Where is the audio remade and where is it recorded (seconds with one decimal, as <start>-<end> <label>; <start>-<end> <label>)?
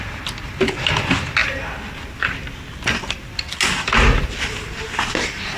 0.0-5.6 recorded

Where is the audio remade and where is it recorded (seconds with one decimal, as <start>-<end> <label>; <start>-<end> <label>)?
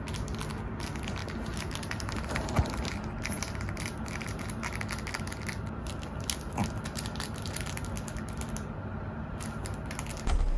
0.0-10.6 recorded